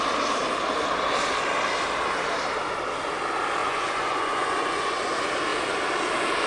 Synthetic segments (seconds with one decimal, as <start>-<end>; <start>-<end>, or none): 3.6-5.0